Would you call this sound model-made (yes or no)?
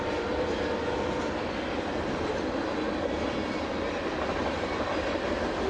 no